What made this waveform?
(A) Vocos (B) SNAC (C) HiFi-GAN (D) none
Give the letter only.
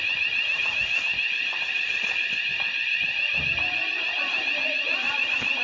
D